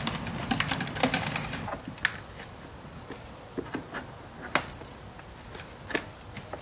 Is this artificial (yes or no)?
no